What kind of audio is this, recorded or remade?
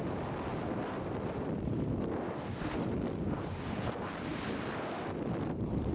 remade